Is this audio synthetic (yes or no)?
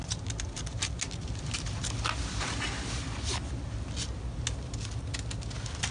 no